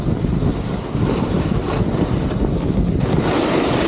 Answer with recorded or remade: recorded